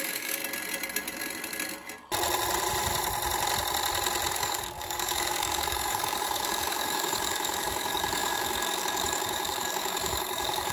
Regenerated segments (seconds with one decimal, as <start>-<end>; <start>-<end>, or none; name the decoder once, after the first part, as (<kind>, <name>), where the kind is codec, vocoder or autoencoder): 0.0-0.4 (codec, DAC); 4.3-10.7